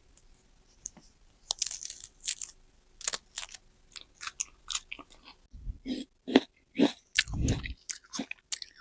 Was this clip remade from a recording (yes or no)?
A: no